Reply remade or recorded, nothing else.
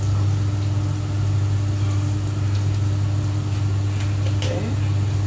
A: recorded